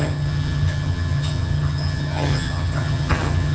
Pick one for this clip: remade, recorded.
remade